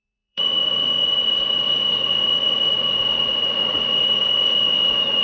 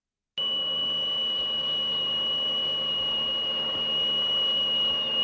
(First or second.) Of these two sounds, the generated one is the first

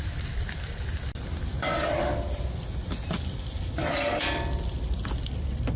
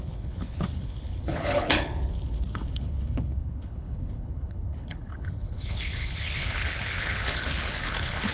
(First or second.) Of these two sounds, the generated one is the second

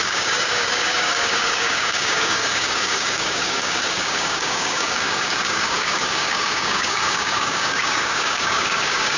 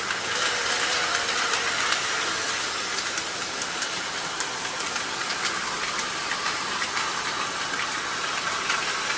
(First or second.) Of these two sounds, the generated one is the first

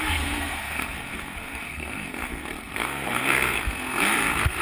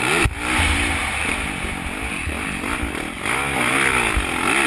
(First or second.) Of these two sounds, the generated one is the first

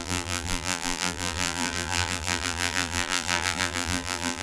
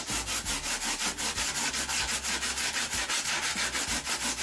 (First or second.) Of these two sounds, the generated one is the first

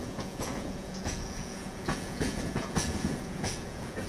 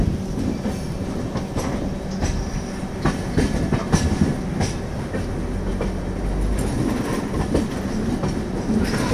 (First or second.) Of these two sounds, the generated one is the first